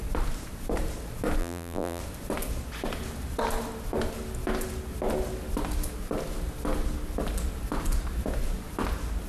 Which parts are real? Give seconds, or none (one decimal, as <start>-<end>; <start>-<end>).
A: 0.0-1.4; 2.0-9.3